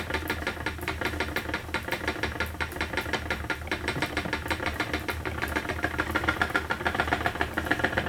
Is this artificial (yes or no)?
no